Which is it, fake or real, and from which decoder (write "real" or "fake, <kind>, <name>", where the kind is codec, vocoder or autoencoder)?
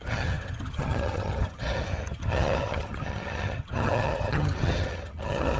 fake, vocoder, HiFi-GAN